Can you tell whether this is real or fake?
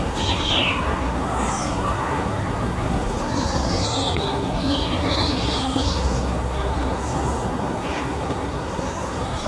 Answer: fake